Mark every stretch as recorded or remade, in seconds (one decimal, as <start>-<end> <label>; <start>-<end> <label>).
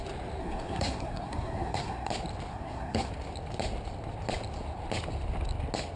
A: 0.0-0.4 recorded; 0.4-2.1 remade; 2.1-2.5 recorded; 2.5-3.1 remade; 3.1-6.0 recorded